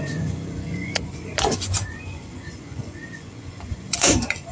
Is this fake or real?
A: fake